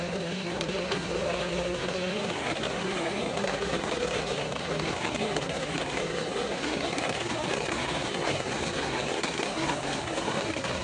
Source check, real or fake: fake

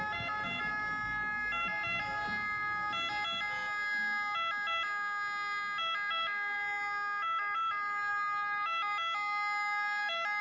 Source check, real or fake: real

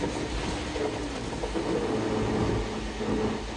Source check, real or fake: real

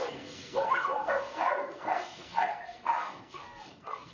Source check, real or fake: fake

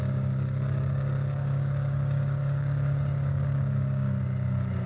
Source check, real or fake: fake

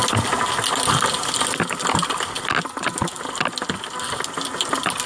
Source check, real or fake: real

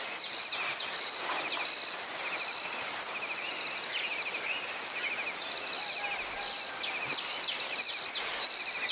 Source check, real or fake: real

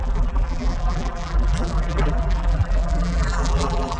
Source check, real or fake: fake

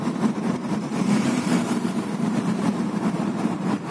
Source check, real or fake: fake